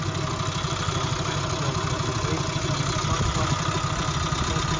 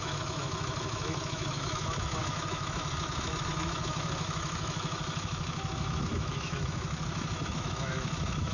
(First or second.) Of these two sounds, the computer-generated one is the second